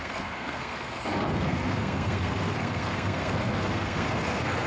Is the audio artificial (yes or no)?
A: yes